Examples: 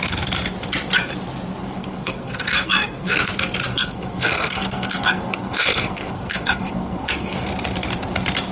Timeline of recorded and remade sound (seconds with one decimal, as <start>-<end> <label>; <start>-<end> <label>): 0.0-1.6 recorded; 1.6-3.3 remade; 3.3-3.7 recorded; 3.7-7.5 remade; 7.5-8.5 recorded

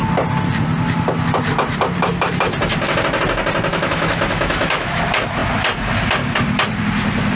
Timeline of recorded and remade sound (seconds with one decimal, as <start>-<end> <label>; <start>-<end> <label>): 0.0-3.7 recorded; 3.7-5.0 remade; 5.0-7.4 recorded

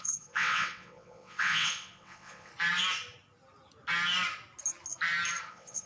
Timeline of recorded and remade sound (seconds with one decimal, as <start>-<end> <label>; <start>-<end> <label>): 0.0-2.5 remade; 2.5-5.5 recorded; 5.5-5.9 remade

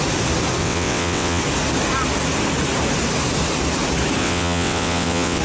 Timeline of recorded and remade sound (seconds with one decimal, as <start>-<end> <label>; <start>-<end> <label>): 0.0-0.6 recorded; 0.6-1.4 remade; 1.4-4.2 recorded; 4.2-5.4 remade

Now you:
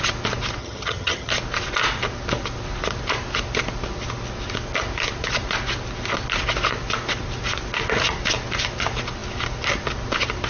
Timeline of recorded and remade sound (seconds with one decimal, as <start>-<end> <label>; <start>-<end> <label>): 0.0-0.6 recorded; 0.6-1.3 remade; 1.3-10.5 recorded